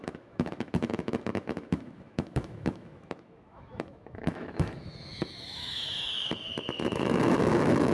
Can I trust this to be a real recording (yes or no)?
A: no